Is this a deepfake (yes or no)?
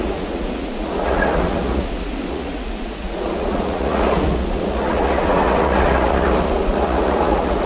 yes